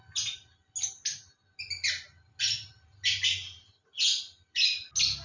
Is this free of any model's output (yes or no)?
yes